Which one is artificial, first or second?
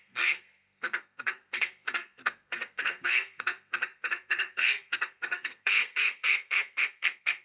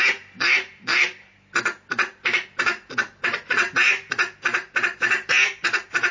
first